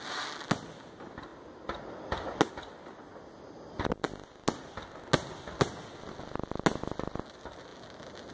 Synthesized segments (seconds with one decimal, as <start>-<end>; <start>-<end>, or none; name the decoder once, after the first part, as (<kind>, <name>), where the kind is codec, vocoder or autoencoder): none